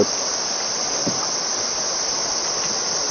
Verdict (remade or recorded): recorded